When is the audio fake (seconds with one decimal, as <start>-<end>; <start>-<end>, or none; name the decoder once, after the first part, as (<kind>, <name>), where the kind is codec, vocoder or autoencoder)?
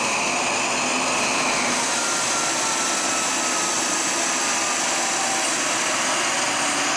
none